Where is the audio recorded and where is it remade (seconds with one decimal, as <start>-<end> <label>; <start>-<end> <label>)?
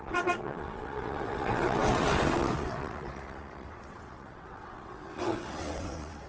0.0-6.3 remade